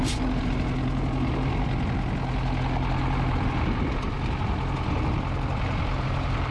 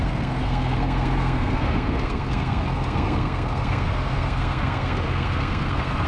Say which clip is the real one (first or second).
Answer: first